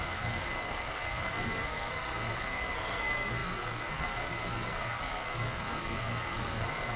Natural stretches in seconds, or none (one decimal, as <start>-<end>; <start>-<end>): none